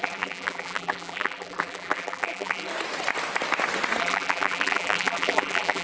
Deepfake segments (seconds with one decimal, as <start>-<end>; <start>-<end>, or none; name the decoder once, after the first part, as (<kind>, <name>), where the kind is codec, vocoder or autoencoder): 0.0-2.7 (vocoder, BigVGAN v2); 4.0-5.8